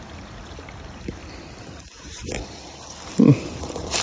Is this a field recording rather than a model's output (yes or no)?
no